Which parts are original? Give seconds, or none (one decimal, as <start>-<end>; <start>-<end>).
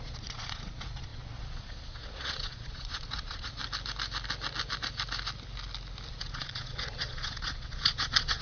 3.6-6.1